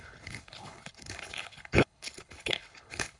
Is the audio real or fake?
fake